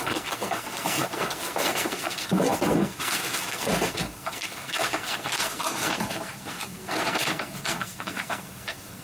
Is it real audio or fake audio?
fake